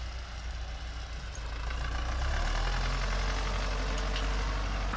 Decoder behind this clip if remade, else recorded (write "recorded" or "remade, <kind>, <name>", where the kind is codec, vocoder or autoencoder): recorded